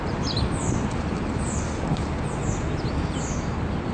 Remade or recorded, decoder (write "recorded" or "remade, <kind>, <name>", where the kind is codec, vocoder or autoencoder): recorded